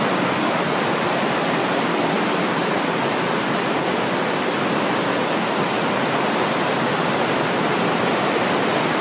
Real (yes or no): yes